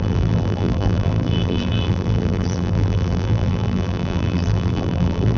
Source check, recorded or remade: remade